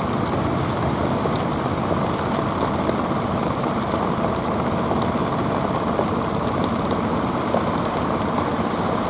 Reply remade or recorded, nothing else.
recorded